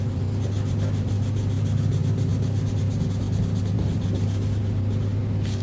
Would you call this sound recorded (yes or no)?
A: yes